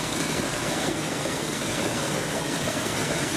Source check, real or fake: fake